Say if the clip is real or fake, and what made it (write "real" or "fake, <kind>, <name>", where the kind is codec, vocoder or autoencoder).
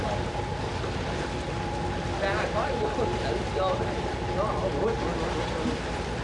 real